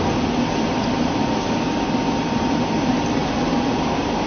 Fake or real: real